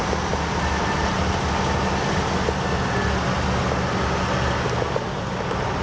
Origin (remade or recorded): recorded